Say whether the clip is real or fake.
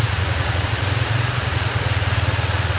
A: fake